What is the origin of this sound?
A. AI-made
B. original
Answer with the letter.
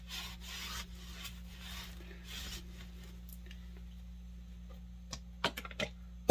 B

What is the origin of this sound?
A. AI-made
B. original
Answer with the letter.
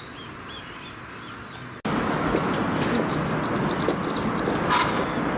B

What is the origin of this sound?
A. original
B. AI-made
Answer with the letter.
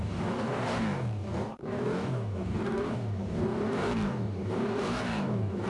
B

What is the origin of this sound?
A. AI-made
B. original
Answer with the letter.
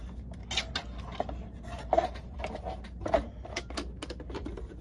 B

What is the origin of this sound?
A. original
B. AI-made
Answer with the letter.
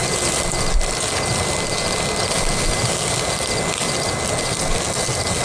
A